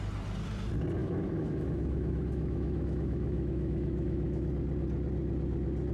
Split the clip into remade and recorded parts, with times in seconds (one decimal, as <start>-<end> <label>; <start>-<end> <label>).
0.0-1.0 recorded; 1.0-4.5 remade; 4.5-5.9 recorded